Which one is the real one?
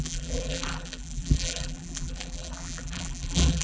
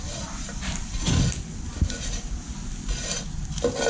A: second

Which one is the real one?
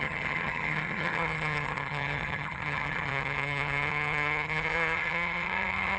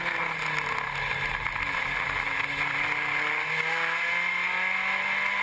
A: second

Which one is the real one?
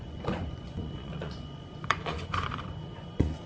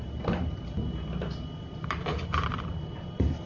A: second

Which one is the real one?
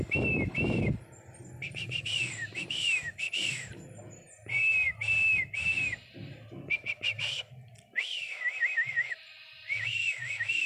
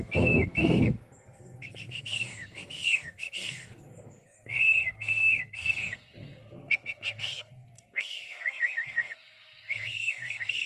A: first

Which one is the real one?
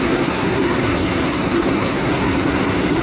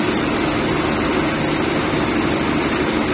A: second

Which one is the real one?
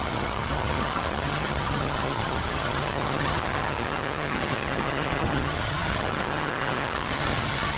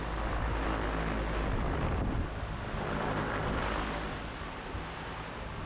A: second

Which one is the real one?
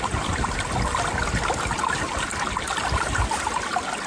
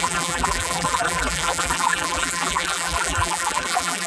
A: first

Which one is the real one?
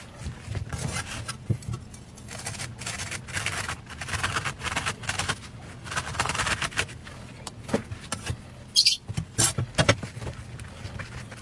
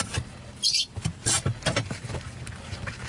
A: first